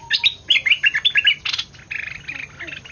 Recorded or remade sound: recorded